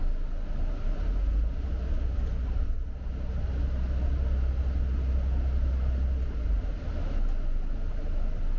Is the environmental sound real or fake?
real